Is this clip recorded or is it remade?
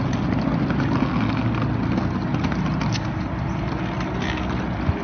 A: recorded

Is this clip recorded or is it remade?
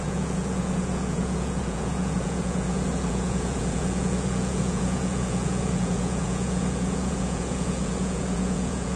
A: remade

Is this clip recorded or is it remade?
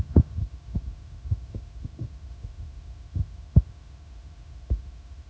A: remade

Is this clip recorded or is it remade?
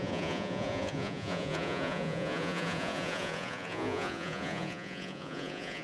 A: remade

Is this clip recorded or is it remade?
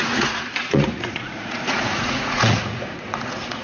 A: remade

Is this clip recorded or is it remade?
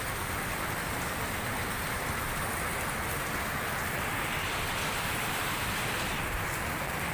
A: recorded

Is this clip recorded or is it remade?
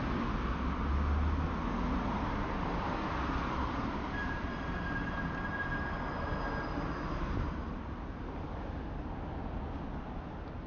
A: recorded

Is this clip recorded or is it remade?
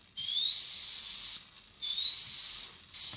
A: recorded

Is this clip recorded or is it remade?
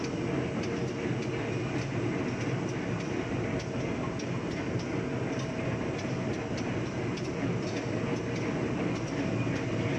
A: recorded